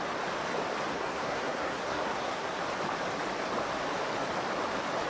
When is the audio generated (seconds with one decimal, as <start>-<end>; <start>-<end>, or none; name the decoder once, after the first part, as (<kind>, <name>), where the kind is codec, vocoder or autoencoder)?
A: 0.9-2.6 (codec, SNAC)